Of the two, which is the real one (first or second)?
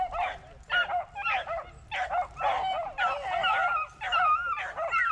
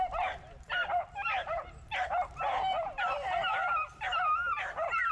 first